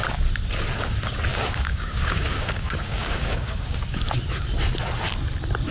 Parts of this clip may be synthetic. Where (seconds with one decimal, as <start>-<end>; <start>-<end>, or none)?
1.3-4.0